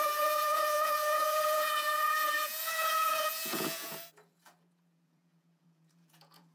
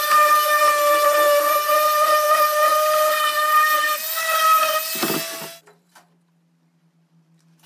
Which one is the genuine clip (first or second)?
second